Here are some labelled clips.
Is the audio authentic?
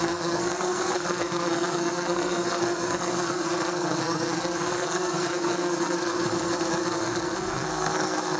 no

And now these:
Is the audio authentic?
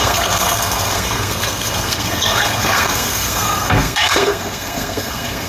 no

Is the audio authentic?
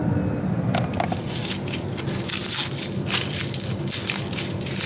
yes